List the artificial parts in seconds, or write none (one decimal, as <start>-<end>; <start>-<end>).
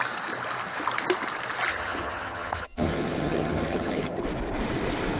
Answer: 1.7-4.2